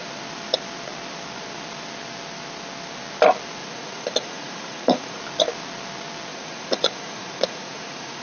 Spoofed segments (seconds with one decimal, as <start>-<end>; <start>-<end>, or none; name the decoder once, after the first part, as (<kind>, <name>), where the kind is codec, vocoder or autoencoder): 3.6-5.2 (vocoder, Vocos); 6.3-8.2